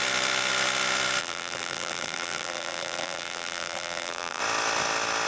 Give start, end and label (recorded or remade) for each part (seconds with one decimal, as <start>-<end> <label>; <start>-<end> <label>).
0.0-1.2 recorded; 1.2-4.4 remade; 4.4-5.3 recorded

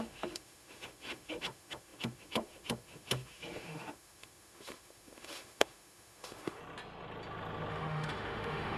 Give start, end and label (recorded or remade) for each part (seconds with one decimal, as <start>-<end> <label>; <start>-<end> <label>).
0.0-6.6 remade; 6.6-7.7 recorded; 7.7-8.8 remade